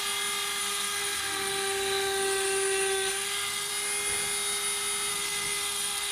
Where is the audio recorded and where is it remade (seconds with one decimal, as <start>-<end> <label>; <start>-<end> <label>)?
0.0-0.6 recorded; 0.6-3.7 remade; 3.7-5.1 recorded; 5.1-6.1 remade